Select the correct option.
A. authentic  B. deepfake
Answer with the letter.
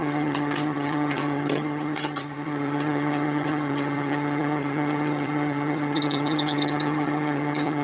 B